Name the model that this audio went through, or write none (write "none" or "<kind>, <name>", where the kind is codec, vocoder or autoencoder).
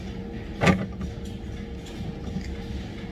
none